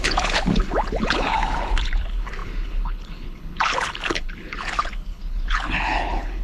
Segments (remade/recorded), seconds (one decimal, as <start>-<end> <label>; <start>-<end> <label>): 0.0-6.4 remade